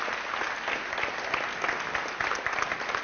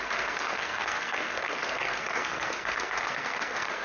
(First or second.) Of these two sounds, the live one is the first